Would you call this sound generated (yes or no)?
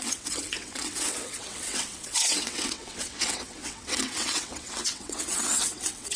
yes